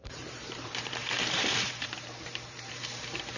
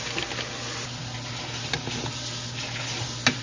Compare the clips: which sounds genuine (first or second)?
second